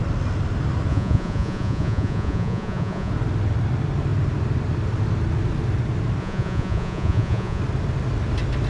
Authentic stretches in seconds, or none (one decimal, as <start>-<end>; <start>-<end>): 0.0-0.9; 3.1-6.2; 7.6-8.7